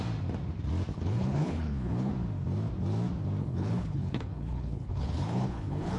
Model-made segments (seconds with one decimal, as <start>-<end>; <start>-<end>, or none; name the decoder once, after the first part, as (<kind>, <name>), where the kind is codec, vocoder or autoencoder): 0.9-2.1 (codec, HILCodec); 3.4-6.0

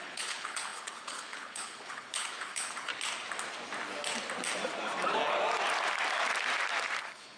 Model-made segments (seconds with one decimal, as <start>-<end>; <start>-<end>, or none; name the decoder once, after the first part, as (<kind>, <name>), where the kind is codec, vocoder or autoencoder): 0.0-2.9 (codec, HILCodec); 7.0-7.4

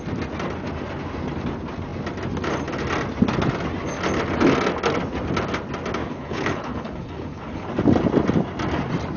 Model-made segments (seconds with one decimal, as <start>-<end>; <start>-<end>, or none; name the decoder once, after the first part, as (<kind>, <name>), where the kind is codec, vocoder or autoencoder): 6.0-7.7 (codec, HILCodec)

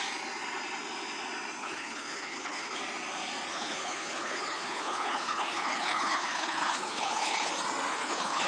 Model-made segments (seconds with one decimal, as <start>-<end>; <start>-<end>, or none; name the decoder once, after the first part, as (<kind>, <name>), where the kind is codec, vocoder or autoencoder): 1.6-2.8 (codec, HILCodec); 3.5-7.5; 7.9-8.5

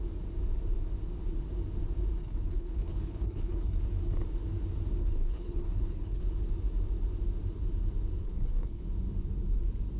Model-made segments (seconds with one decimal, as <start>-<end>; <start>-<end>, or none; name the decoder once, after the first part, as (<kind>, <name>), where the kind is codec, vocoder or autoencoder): 2.2-3.8 (codec, HILCodec); 5.0-6.2; 8.2-8.8

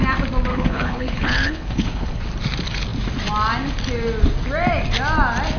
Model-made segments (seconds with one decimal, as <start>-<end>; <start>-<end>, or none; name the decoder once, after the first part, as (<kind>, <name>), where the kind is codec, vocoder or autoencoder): 0.5-2.2 (codec, HILCodec)